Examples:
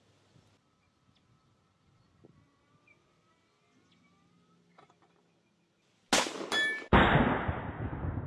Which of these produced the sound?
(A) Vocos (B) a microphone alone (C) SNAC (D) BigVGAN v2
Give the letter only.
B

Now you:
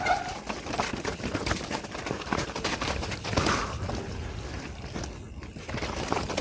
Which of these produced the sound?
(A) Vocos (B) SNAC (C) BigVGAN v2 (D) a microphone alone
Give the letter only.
D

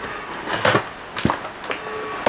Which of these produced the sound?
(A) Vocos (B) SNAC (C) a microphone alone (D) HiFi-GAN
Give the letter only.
C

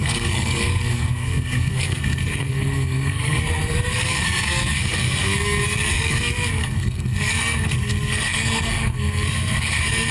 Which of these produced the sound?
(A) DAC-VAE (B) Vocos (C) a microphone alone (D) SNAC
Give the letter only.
D